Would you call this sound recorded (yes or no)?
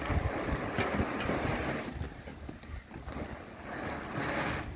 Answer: yes